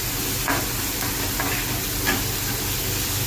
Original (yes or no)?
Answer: yes